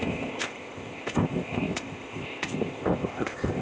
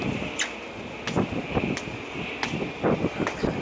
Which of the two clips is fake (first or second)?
first